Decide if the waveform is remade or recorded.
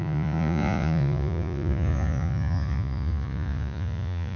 remade